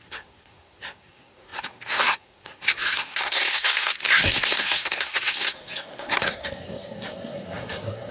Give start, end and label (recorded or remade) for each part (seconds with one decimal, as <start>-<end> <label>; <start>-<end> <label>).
0.0-8.1 remade